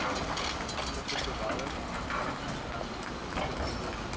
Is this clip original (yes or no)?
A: yes